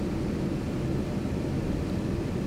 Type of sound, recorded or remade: recorded